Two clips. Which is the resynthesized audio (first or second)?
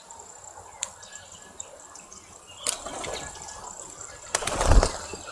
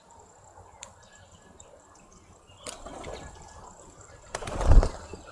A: second